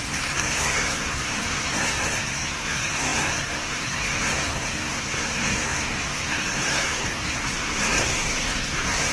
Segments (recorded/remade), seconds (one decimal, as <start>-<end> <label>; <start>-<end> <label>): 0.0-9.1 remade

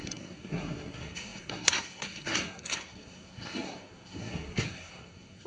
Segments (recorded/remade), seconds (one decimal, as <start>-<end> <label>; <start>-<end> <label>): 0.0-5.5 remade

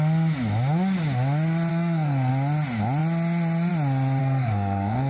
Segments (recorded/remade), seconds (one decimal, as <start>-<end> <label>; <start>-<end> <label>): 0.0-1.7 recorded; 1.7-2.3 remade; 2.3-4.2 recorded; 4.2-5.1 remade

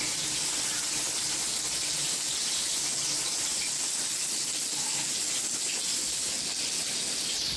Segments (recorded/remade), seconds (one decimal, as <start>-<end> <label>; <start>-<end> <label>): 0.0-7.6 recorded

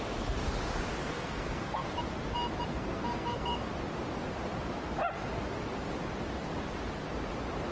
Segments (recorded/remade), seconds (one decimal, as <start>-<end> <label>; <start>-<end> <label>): 0.0-1.0 recorded; 1.0-1.8 remade; 1.8-2.7 recorded; 2.7-3.7 remade; 3.7-7.7 recorded